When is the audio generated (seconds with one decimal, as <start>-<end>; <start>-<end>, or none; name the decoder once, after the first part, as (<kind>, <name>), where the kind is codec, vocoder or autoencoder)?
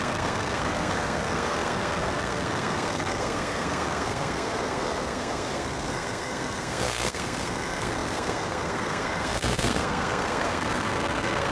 0.0-11.5 (codec, SNAC)